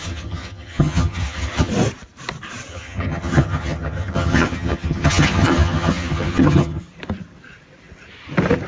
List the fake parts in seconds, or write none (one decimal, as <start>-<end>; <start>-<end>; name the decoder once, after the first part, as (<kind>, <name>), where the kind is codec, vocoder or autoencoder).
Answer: 0.0-1.7 (vocoder, HiFi-GAN); 2.7-6.8